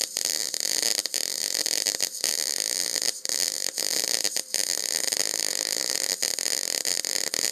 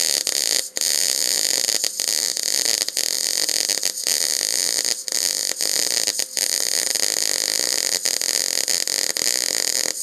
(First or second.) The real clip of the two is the second